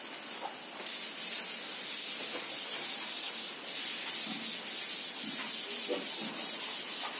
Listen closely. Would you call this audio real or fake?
real